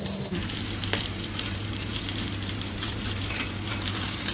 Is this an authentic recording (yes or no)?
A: no